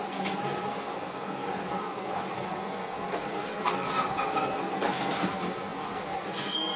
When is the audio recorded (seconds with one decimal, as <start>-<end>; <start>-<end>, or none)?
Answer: none